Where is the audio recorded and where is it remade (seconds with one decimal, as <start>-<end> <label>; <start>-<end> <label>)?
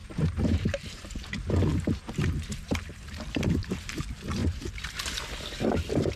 0.0-1.1 remade; 1.1-1.7 recorded; 1.7-3.7 remade; 3.7-4.4 recorded; 4.4-4.9 remade; 4.9-6.2 recorded